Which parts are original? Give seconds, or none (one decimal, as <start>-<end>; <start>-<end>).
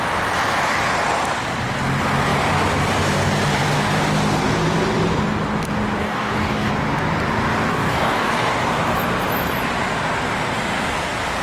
0.0-6.0; 6.7-7.7; 8.5-11.4